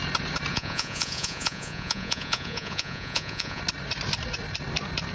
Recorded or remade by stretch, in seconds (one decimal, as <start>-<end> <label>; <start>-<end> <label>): 0.0-0.5 recorded; 0.5-3.6 remade; 3.6-5.1 recorded